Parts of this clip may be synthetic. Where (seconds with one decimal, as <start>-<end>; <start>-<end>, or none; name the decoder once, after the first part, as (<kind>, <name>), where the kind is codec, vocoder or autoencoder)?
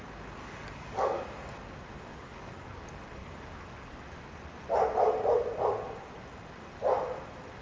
0.4-1.2 (codec, DAC); 2.1-2.8; 3.2-4.0